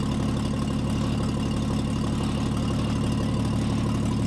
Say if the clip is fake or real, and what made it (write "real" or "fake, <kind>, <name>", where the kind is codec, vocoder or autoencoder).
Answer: real